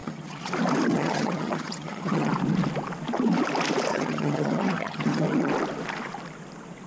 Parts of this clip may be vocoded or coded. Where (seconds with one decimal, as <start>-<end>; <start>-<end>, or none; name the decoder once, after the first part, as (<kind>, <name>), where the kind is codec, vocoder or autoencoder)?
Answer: 0.0-0.5 (vocoder, HiFi-GAN); 0.9-2.3; 3.9-5.5